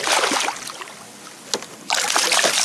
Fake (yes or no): no